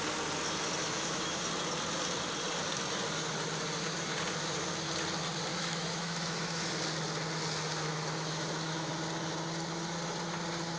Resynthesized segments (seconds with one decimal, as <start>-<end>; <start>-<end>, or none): 0.8-1.4; 5.5-6.7; 7.9-8.9